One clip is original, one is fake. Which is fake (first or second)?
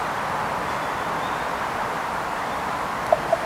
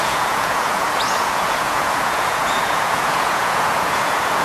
second